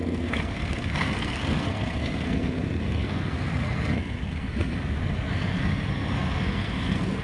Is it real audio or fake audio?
fake